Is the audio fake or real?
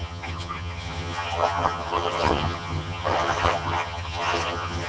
fake